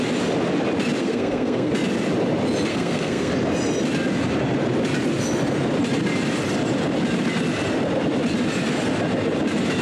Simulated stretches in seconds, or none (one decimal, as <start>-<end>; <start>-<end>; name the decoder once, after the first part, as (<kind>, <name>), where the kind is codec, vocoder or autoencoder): 1.0-1.7 (codec, SNAC); 2.7-3.3